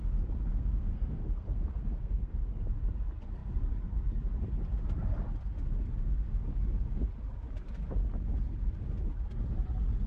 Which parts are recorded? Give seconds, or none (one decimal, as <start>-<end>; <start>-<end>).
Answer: 0.0-0.5; 2.5-10.1